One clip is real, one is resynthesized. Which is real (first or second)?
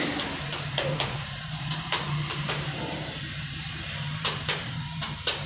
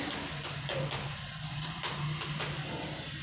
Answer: second